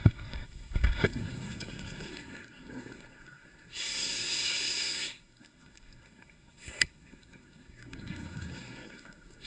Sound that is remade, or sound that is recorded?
remade